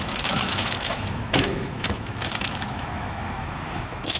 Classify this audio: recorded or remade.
remade